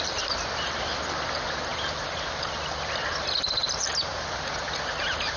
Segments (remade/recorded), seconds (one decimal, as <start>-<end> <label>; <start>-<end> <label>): 0.0-5.4 recorded